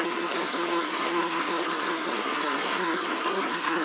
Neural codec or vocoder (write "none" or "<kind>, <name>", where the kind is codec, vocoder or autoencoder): codec, SNAC